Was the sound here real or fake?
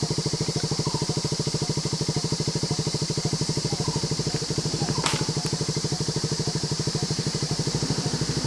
fake